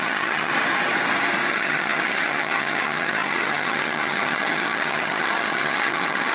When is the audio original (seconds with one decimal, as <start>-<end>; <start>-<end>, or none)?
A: 0.5-1.5